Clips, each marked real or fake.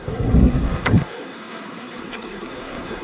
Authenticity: fake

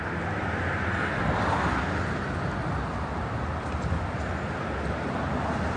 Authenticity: real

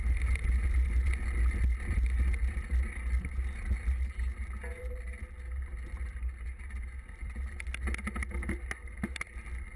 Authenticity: real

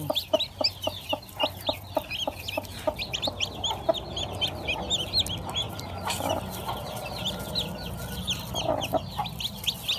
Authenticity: real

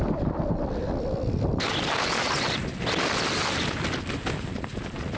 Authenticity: real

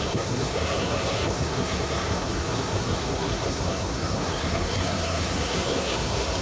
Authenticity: fake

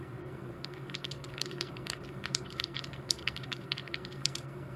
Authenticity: fake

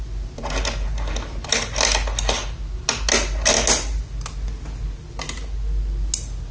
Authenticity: real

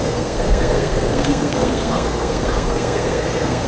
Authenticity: fake